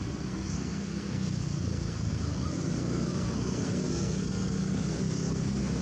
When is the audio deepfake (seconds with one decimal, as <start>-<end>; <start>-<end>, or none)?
0.0-5.8